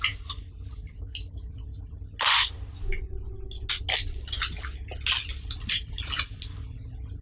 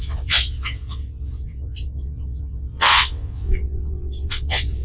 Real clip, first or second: first